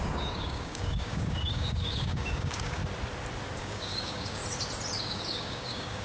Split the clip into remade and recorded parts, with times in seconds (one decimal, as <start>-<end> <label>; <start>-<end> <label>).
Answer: 0.0-2.8 remade; 2.8-3.6 recorded; 3.6-4.4 remade; 4.4-5.0 recorded; 5.0-6.0 remade